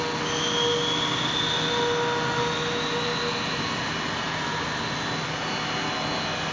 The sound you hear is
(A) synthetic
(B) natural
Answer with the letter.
B